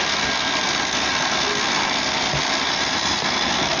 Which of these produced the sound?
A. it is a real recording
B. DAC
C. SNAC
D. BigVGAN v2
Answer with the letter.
A